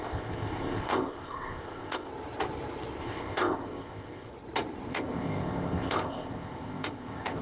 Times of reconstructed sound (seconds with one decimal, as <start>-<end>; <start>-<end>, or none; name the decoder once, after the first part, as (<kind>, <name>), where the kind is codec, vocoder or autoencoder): 0.0-2.1 (codec, ZipCodec); 3.0-4.3; 4.9-7.4